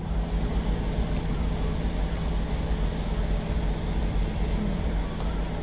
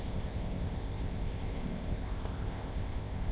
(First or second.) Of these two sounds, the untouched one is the first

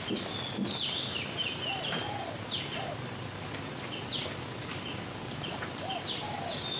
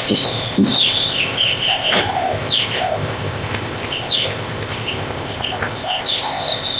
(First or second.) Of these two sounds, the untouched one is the first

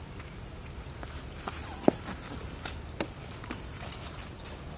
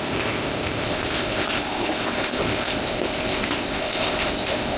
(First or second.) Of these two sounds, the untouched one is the first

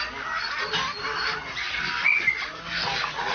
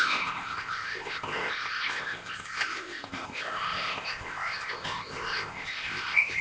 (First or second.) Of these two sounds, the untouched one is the first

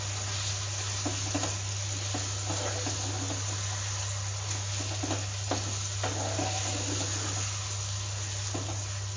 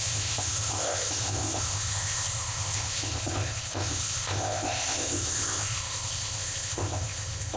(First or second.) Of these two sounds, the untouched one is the first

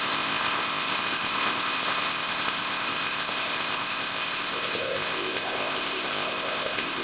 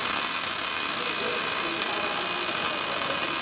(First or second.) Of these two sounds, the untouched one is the second